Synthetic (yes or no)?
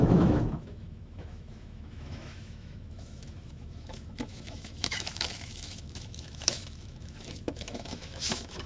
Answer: yes